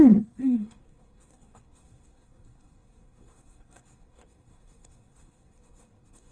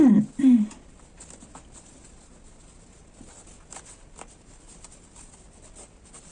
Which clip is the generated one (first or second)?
first